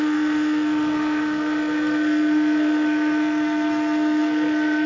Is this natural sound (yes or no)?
no